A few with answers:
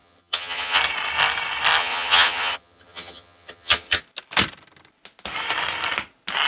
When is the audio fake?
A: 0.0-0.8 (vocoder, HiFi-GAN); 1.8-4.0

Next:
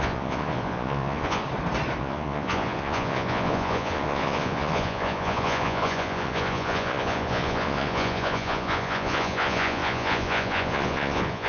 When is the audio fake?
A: 0.0-1.4 (vocoder, Vocos); 2.0-11.5